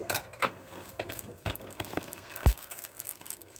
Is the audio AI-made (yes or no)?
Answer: yes